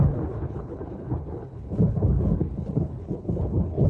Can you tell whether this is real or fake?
fake